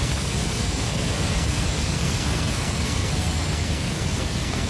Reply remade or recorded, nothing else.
remade